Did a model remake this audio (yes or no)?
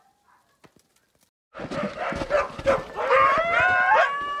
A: no